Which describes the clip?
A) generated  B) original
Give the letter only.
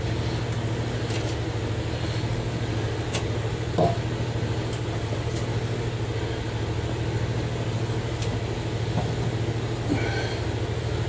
B